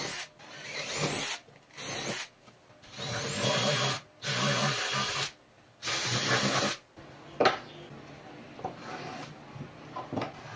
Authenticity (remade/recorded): recorded